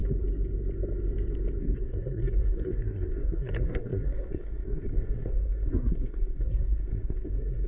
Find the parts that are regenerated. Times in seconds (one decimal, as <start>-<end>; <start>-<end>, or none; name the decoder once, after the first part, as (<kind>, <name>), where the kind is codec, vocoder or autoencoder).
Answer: 1.6-7.7 (codec, SNAC)